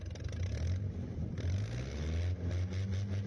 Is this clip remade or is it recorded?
recorded